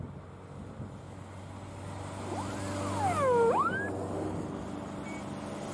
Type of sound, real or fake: real